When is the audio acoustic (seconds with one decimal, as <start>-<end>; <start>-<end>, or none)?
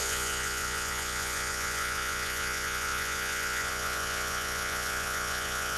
none